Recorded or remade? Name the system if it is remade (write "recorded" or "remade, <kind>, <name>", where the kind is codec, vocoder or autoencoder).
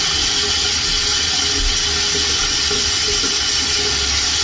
recorded